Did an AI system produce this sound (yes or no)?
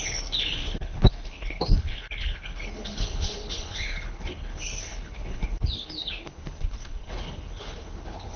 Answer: yes